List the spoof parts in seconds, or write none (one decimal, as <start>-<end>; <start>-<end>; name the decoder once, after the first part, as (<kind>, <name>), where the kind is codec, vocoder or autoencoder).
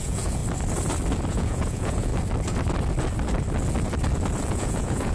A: 0.0-0.4 (vocoder, Vocos); 1.3-2.1; 4.5-5.1